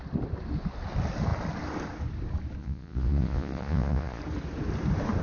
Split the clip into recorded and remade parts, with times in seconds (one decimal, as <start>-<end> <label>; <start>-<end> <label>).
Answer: 0.0-2.6 recorded; 2.6-4.2 remade; 4.2-5.2 recorded

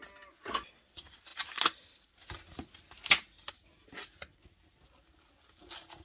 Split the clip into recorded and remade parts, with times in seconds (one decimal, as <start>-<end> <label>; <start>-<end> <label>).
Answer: 0.0-6.0 recorded

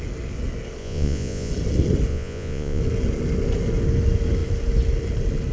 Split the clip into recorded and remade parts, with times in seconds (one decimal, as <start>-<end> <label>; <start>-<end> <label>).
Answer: 0.0-0.8 recorded; 0.8-1.5 remade; 1.5-2.1 recorded; 2.1-2.8 remade; 2.8-5.5 recorded

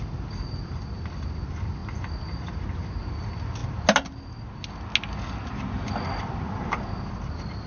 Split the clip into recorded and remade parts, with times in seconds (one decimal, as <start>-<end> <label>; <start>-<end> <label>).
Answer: 0.0-7.7 recorded

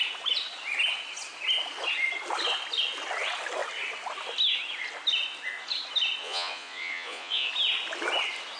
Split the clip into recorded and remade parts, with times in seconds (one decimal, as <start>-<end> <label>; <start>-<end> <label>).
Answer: 0.0-6.2 recorded; 6.2-7.5 remade; 7.5-8.6 recorded

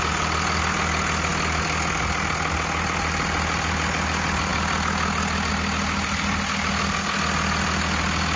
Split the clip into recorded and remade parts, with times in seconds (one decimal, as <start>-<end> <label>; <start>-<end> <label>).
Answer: 0.0-8.4 recorded